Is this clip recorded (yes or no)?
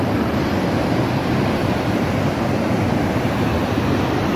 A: no